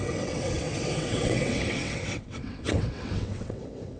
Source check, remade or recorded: remade